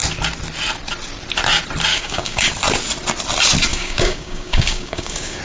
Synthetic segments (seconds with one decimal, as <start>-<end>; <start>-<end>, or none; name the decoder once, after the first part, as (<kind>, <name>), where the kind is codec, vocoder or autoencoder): 1.9-2.5 (codec, DAC); 3.7-5.4